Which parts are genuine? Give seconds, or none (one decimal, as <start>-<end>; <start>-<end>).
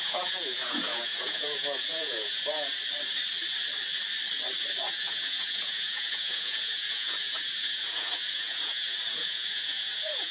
2.7-4.9